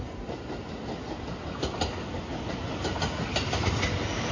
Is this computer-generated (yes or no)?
no